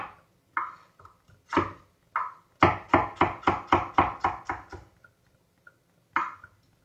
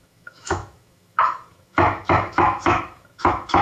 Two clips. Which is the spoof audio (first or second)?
second